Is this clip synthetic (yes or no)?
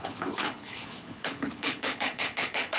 yes